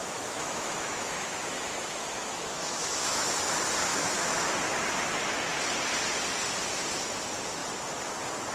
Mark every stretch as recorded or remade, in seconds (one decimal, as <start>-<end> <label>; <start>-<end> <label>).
0.0-3.2 remade; 3.2-3.9 recorded; 3.9-4.5 remade; 4.5-8.5 recorded